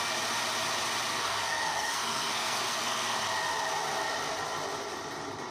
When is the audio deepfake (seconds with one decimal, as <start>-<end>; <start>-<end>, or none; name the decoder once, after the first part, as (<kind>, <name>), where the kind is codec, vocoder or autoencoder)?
1.1-3.2 (codec, SNAC)